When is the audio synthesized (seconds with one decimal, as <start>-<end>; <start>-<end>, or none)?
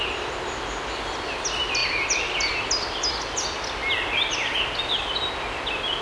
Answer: none